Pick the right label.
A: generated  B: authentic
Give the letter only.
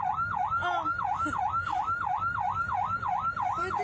B